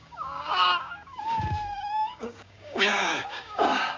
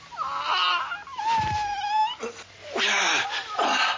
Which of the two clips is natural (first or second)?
second